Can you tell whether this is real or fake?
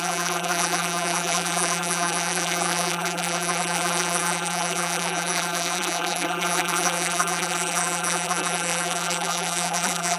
fake